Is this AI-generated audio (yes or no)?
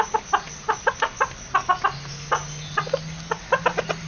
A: no